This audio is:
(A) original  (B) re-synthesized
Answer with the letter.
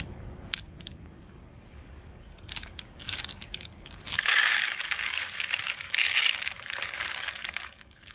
B